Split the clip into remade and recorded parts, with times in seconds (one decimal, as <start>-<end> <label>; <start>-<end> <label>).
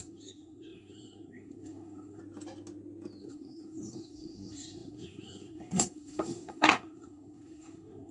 0.0-2.2 remade; 2.2-3.2 recorded; 3.2-8.1 remade